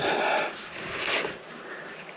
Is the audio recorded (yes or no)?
yes